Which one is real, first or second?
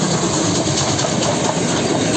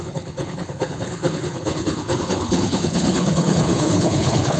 first